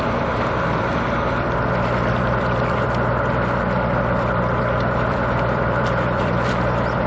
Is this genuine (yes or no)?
no